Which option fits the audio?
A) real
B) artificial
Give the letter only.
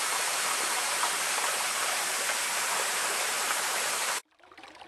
B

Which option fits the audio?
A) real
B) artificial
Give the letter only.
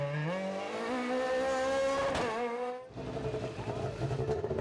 A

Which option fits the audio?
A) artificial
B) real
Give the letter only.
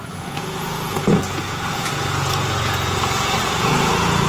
A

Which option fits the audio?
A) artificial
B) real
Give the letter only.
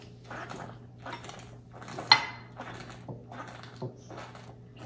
B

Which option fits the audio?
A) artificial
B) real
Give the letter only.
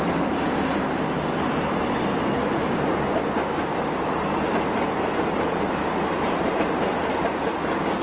B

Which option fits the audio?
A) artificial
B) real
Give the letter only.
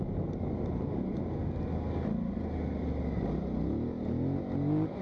B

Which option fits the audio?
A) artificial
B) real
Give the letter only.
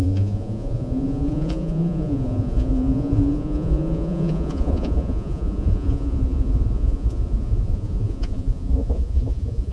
A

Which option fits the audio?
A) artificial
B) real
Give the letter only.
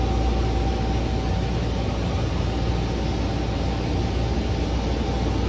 B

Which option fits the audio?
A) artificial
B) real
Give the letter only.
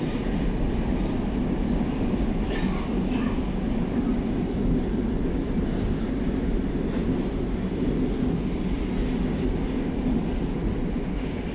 B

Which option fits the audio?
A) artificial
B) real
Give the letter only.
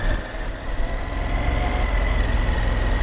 B